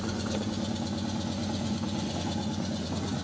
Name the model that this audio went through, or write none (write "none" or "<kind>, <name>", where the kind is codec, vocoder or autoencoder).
vocoder, Vocos